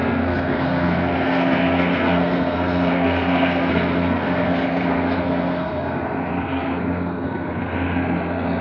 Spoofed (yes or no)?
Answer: yes